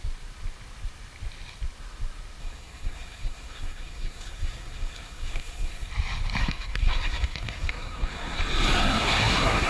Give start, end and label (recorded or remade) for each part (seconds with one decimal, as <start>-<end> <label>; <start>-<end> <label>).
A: 0.0-2.4 recorded; 2.4-5.9 remade; 5.9-6.4 recorded; 6.4-8.4 remade; 8.4-8.8 recorded; 8.8-9.7 remade